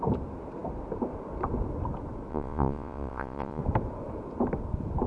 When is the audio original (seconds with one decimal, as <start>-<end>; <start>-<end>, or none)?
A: 0.0-2.3; 3.6-5.1